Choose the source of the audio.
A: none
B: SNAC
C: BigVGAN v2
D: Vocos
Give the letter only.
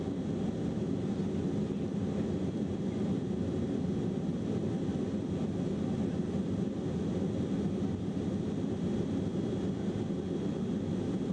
A